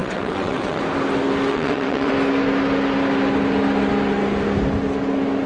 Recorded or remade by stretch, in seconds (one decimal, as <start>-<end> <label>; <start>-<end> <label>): 0.0-0.8 remade; 0.8-1.5 recorded; 1.5-2.1 remade; 2.1-5.5 recorded